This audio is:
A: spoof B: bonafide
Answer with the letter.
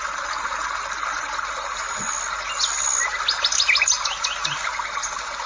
B